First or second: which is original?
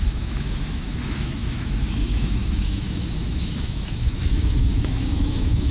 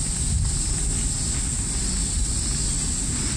second